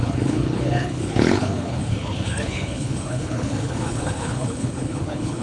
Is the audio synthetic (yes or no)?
yes